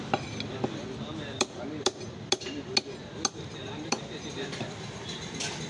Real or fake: real